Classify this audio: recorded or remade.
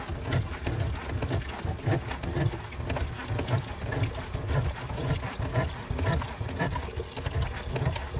recorded